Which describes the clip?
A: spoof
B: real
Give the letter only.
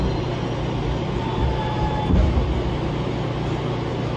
B